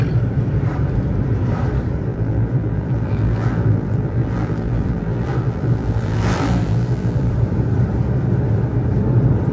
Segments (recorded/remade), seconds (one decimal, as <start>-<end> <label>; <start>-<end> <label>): 0.0-2.1 recorded; 2.1-7.3 remade; 7.3-9.5 recorded